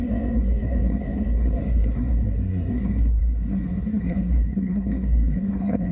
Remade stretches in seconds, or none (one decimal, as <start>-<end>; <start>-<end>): 0.0-5.9